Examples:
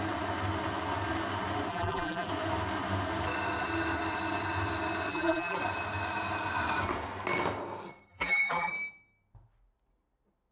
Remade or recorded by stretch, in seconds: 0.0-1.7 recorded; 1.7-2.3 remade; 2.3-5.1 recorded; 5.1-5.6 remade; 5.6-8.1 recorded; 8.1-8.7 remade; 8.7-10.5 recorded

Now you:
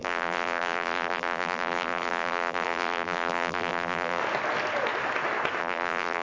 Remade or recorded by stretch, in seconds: 0.0-4.2 remade; 4.2-5.6 recorded; 5.6-6.2 remade

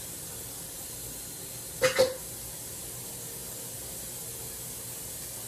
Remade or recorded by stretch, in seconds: 0.0-5.5 recorded

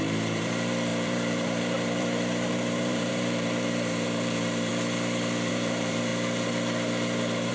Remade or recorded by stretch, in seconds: 0.0-4.7 remade; 4.7-5.5 recorded; 5.5-6.1 remade; 6.1-7.5 recorded